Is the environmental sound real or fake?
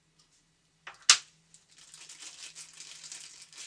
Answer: real